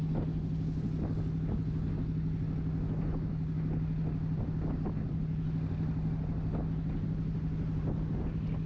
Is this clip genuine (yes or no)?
yes